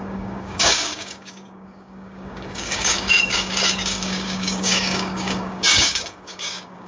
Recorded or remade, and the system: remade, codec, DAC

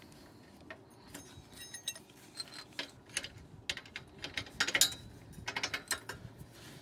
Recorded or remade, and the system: recorded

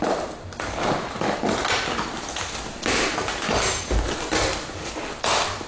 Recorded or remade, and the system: recorded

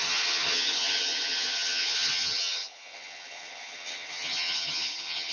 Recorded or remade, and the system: remade, vocoder, HiFi-GAN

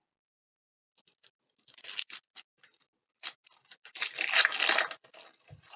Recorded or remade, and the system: recorded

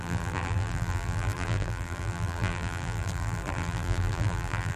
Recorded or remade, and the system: remade, vocoder, BigVGAN v2